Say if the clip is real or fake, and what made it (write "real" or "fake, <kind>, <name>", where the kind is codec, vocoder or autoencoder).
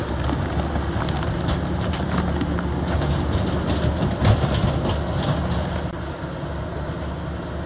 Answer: real